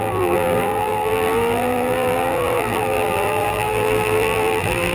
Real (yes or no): no